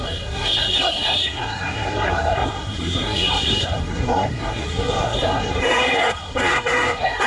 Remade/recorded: remade